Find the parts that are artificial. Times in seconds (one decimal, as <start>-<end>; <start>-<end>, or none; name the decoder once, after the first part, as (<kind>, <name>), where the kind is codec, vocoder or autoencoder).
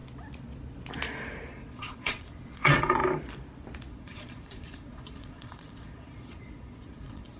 1.5-3.0 (vocoder, Vocos); 3.9-7.4